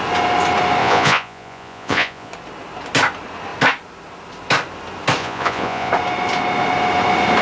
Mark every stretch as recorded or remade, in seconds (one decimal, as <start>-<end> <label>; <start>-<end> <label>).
0.0-0.8 recorded; 0.8-2.3 remade; 2.3-5.2 recorded; 5.2-5.9 remade; 5.9-7.4 recorded